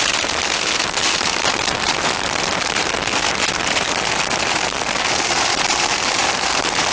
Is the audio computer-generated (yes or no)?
yes